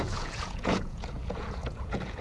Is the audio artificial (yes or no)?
yes